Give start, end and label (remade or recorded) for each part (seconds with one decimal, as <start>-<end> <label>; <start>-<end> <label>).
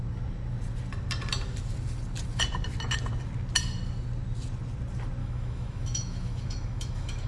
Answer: 0.0-5.2 recorded; 5.2-7.3 remade